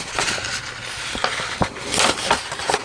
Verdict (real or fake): real